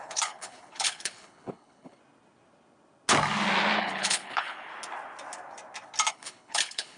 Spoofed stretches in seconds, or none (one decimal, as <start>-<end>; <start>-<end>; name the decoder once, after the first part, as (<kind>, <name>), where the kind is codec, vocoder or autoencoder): 0.0-2.0 (codec, HILCodec); 3.8-4.7; 6.1-7.0